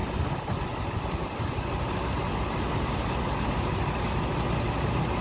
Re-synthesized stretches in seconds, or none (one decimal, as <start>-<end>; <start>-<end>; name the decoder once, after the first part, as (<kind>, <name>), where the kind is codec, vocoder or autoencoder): none